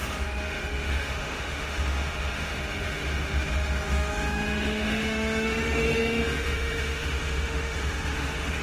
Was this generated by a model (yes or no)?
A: yes